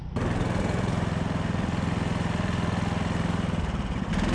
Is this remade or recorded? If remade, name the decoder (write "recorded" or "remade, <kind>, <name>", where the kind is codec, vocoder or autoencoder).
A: recorded